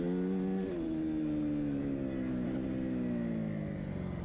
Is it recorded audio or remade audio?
recorded